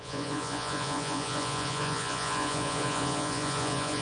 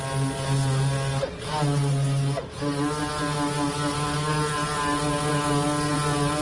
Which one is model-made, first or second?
first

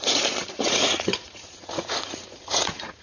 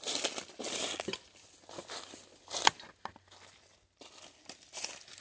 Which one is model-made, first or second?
first